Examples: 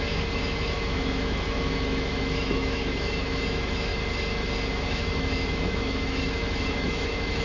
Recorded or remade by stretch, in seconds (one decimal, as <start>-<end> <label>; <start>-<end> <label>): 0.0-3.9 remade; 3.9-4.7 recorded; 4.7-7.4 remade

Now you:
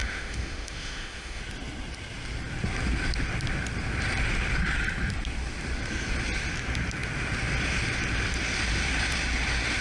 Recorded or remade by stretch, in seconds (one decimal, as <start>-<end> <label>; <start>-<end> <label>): 0.0-1.4 remade; 1.4-9.8 recorded

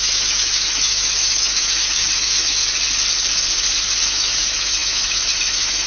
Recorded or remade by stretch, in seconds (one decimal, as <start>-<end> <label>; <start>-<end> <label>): 0.0-2.6 remade; 2.6-4.1 recorded; 4.1-5.9 remade

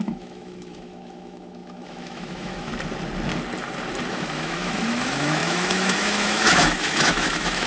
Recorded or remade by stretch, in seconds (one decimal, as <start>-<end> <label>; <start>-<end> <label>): 0.0-2.7 remade; 2.7-4.1 recorded; 4.1-7.7 remade

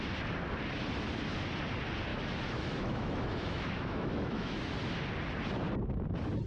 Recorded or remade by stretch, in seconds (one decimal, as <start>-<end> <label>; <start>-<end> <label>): 0.0-2.1 recorded; 2.1-4.7 remade; 4.7-6.5 recorded

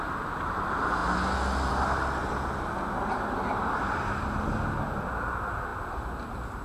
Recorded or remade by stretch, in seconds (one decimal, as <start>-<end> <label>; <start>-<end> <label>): 0.0-6.6 recorded

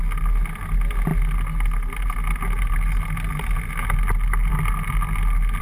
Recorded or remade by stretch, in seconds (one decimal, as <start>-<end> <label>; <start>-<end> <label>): 0.0-5.6 recorded

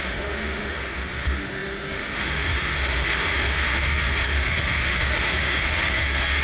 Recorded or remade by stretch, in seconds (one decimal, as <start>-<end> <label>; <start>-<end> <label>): 0.0-6.4 remade